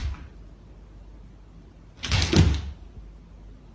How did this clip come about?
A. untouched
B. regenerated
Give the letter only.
A